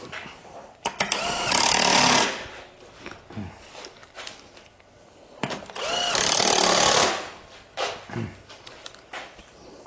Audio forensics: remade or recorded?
recorded